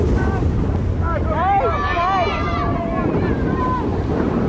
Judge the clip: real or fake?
real